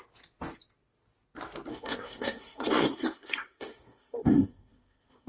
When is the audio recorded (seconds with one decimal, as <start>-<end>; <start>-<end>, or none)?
0.0-1.7